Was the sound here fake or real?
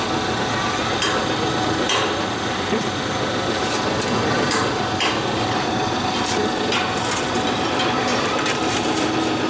real